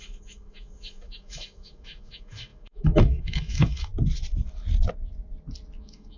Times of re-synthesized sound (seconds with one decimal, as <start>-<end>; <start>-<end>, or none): 0.0-3.9; 5.8-6.2